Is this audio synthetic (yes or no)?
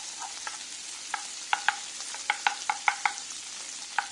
no